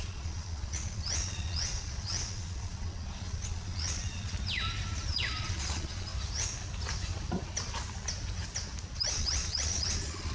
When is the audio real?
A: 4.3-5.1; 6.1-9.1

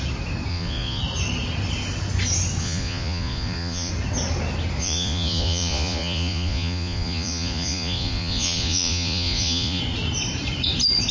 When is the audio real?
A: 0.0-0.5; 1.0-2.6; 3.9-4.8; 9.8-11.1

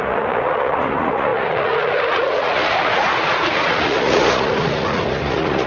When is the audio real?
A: none

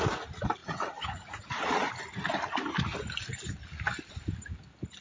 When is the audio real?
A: 0.0-0.6; 1.9-5.0

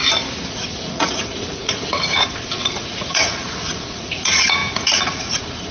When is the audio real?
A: 0.0-0.5

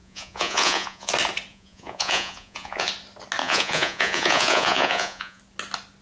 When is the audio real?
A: 1.1-1.5; 2.9-3.4; 5.4-6.0

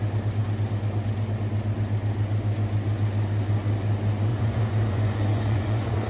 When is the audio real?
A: 0.0-4.3

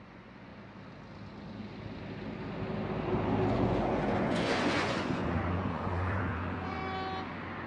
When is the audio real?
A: 0.5-3.5; 6.8-7.7